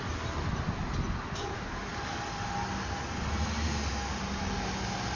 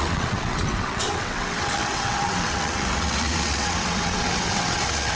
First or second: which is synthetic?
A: second